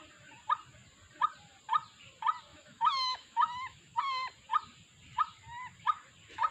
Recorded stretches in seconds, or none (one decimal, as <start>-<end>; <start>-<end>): 0.0-2.5; 4.0-6.5